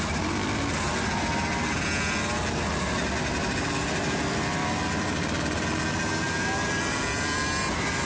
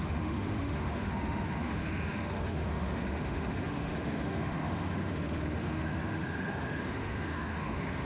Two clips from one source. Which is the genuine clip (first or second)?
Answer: first